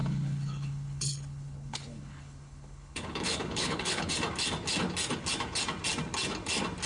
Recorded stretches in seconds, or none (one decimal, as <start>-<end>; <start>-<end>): 4.1-6.9